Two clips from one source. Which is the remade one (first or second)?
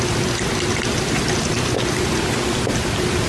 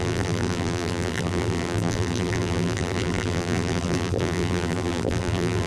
second